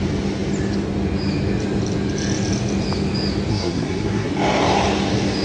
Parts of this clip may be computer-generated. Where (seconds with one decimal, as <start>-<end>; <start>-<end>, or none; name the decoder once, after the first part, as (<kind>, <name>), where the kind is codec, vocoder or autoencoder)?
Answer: 3.5-4.3 (codec, SNAC)